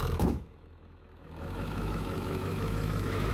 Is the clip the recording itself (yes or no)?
no